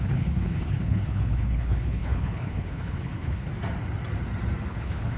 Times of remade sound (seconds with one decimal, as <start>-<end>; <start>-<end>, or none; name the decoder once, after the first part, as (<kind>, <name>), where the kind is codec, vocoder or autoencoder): 0.0-3.5 (codec, HILCodec); 4.7-5.2